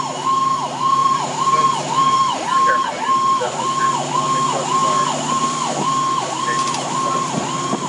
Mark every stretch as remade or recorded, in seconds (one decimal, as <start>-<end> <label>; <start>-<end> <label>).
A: 0.0-1.0 recorded; 1.0-3.8 remade; 3.8-4.8 recorded; 4.8-6.2 remade; 6.2-7.9 recorded